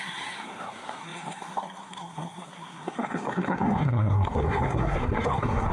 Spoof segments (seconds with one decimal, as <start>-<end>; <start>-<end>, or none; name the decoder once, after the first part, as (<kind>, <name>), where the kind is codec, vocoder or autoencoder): 0.0-5.7 (codec, SNAC)